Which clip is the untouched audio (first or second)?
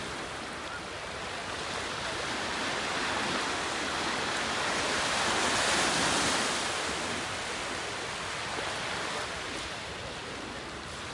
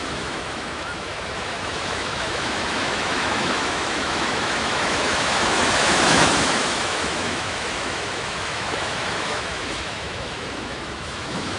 first